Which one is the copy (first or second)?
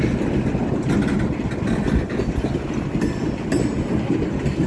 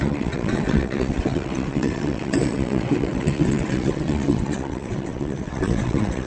second